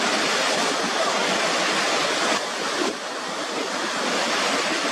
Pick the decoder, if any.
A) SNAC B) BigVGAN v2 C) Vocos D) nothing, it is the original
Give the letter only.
D